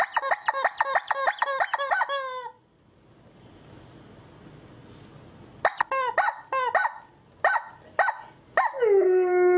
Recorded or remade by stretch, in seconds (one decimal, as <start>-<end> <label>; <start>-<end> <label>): 0.0-9.6 recorded